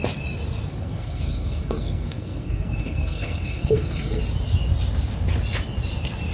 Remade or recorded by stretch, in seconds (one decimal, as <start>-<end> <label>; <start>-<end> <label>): 0.0-0.7 recorded; 0.7-4.2 remade; 4.2-6.3 recorded